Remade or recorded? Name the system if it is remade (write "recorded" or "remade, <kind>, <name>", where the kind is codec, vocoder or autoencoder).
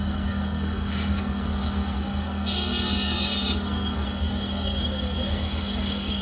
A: remade, codec, SNAC